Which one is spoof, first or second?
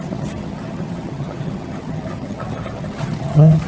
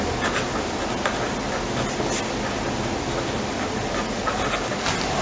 first